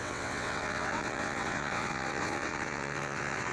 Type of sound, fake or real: fake